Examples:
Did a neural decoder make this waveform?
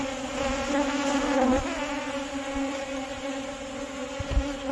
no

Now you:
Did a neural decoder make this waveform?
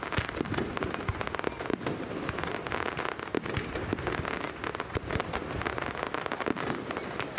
no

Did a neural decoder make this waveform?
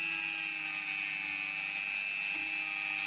no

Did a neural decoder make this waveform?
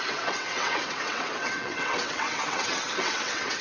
yes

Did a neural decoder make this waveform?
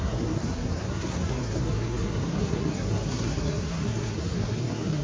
yes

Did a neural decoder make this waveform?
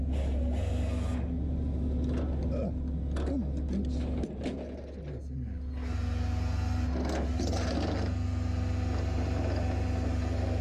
no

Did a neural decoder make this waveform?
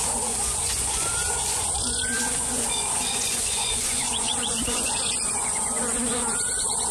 yes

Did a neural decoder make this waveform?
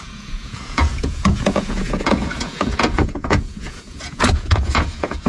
yes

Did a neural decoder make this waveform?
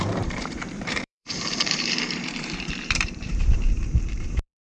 yes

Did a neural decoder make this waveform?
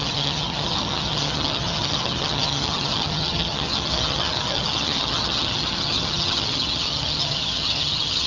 yes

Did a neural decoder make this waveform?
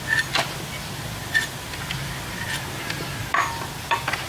no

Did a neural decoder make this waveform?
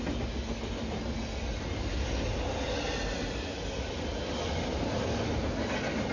no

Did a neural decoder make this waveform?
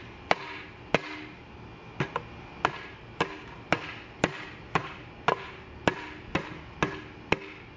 no